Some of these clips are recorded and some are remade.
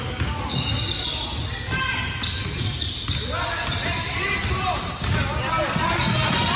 recorded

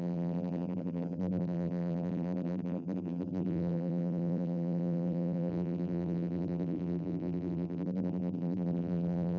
remade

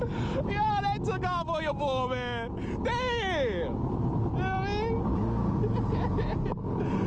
recorded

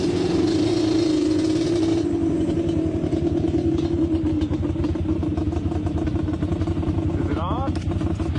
remade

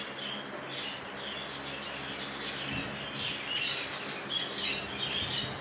recorded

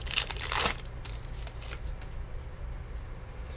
remade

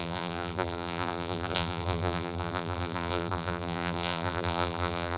remade